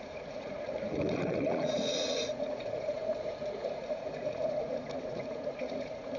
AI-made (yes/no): yes